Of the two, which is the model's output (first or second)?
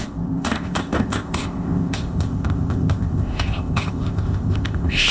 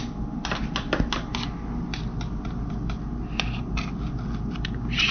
first